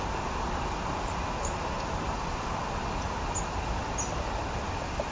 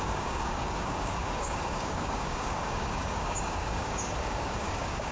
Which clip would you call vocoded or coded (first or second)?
second